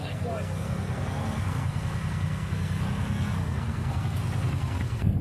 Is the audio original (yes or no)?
no